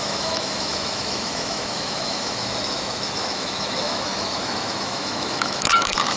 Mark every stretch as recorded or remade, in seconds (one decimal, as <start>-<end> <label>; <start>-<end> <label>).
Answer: 0.0-6.2 remade